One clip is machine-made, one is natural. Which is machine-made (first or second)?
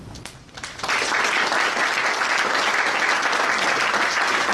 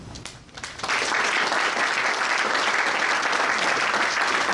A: second